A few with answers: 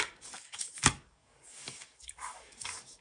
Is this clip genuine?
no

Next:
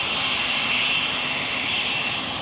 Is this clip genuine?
yes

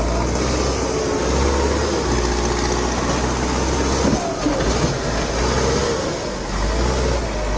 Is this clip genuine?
yes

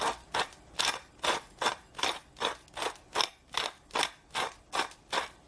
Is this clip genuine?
yes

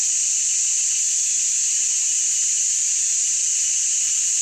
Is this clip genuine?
yes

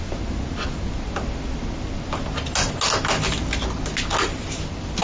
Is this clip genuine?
yes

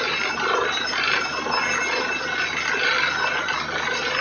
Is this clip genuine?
yes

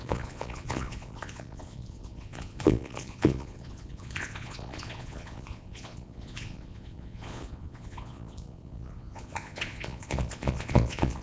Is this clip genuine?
no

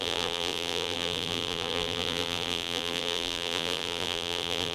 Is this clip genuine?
no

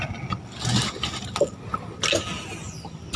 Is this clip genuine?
yes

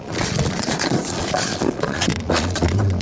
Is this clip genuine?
no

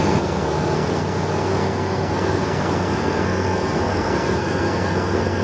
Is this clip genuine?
no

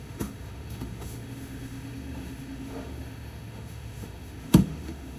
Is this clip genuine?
no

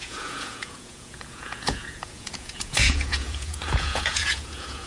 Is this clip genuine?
no